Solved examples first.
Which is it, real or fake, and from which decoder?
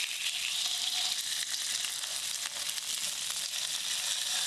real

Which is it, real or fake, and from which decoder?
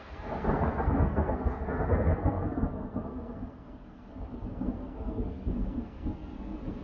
fake, codec, SNAC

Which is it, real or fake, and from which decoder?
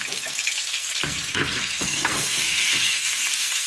fake, codec, SNAC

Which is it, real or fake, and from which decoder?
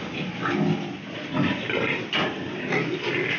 real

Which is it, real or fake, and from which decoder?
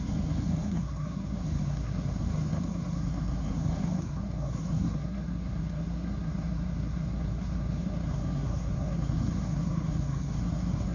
fake, codec, SNAC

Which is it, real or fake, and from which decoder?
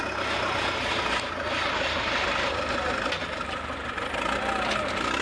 real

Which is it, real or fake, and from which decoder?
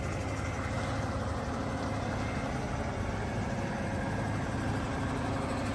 real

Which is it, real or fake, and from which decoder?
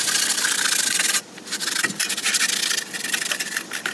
real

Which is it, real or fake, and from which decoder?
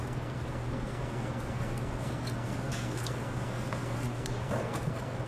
fake, codec, SNAC